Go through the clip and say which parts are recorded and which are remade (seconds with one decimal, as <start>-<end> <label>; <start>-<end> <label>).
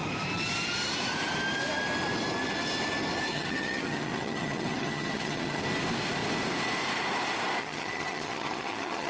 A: 0.0-3.3 recorded; 3.3-5.6 remade; 5.6-7.6 recorded; 7.6-9.1 remade